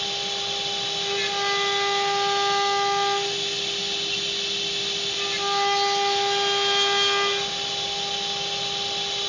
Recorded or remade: recorded